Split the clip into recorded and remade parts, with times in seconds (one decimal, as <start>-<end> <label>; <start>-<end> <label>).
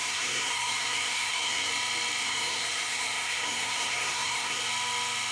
0.0-1.7 remade; 1.7-2.2 recorded; 2.2-4.6 remade; 4.6-5.3 recorded